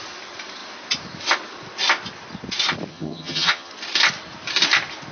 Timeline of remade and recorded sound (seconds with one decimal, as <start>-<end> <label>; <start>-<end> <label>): 0.0-2.9 recorded; 2.9-3.7 remade; 3.7-5.1 recorded